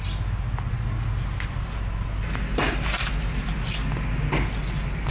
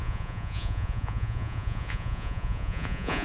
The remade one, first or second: second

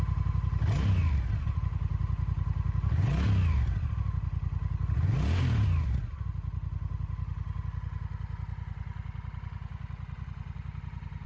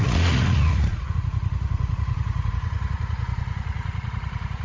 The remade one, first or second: second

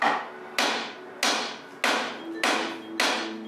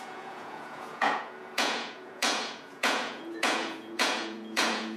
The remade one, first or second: second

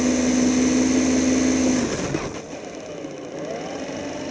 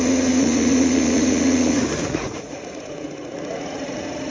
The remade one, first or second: second